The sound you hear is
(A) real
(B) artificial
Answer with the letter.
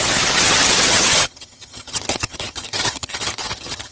B